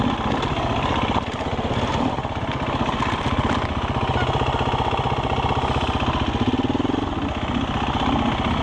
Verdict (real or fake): real